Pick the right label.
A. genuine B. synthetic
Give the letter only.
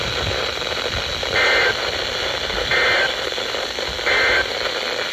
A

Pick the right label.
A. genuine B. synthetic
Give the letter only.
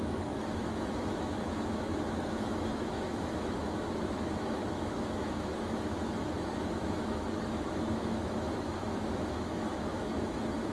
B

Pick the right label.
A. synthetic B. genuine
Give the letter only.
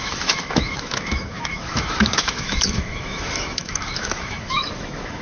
A